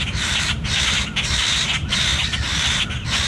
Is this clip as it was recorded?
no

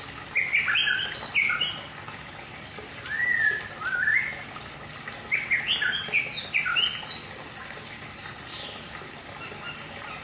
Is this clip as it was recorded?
yes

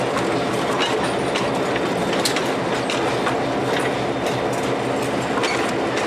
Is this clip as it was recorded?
yes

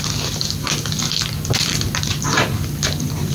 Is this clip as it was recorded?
no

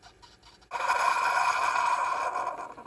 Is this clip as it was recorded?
yes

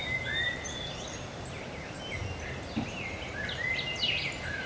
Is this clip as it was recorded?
yes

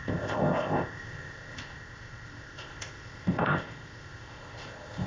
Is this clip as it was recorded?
no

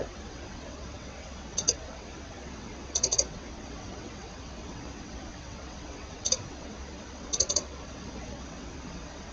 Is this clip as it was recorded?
no